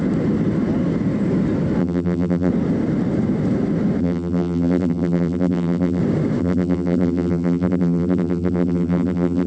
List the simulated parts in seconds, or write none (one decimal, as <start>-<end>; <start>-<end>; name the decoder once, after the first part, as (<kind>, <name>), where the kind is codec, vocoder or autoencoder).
1.8-2.5 (vocoder, BigVGAN v2); 4.0-6.0; 6.4-9.5